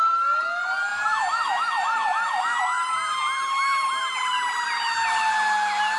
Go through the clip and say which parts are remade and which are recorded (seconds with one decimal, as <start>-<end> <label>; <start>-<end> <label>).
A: 0.0-6.0 recorded